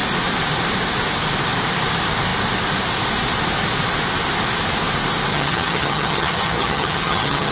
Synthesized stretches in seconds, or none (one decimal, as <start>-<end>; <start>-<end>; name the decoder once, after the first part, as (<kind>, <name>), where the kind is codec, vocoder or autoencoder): 5.3-7.5 (vocoder, HiFi-GAN)